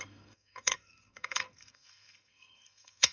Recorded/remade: remade